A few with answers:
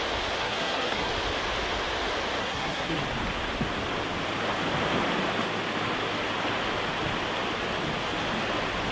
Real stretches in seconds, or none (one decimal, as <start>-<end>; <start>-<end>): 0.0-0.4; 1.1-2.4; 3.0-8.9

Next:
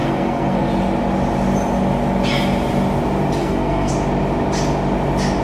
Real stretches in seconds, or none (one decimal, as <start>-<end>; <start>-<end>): 0.7-3.4; 3.9-5.4

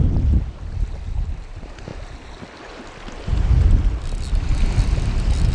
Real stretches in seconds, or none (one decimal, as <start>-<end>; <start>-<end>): 0.0-5.5